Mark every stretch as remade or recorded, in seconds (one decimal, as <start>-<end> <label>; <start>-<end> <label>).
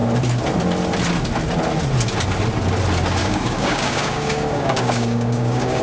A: 0.0-3.2 recorded; 3.2-5.8 remade